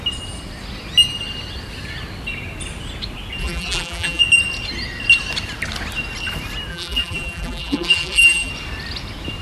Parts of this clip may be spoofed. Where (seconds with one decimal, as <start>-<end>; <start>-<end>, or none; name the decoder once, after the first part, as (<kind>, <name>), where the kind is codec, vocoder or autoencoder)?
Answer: 3.4-4.2 (vocoder, BigVGAN v2); 6.7-8.5

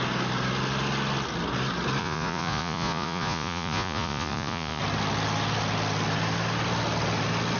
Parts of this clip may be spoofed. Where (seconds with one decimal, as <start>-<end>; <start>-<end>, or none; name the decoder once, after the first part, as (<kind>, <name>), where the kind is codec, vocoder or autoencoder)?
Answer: 2.0-4.8 (vocoder, Vocos)

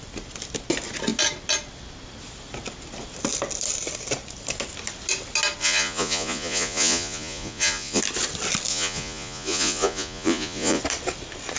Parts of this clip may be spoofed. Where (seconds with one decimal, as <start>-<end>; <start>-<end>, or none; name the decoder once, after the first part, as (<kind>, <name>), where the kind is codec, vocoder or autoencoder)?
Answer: 5.6-8.0 (vocoder, Vocos); 8.7-10.8

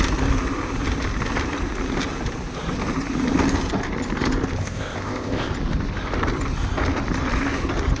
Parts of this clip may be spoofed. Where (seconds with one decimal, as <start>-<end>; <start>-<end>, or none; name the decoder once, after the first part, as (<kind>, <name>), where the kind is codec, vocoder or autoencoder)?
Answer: 4.6-5.5 (codec, ZipCodec)

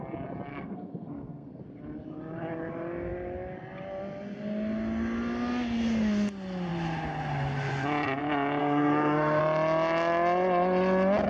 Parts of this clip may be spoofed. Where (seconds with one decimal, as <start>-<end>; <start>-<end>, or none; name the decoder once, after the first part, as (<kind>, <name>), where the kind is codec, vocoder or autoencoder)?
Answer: 0.5-1.6 (codec, SNAC); 8.6-9.4

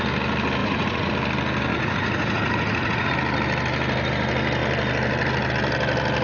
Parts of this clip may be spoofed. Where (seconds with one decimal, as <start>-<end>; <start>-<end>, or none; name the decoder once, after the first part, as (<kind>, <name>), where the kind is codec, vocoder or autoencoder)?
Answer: 0.6-1.1 (vocoder, Vocos); 1.7-3.1

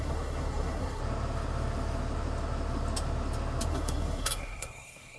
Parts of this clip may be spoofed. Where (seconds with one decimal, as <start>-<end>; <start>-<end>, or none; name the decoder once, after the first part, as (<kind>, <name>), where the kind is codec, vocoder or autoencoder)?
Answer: 0.0-1.0 (codec, SNAC); 3.7-5.2

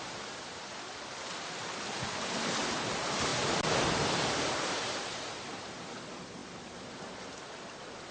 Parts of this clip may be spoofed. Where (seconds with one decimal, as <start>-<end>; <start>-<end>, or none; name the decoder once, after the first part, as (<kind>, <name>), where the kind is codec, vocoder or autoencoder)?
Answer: 3.3-5.8 (vocoder, BigVGAN v2)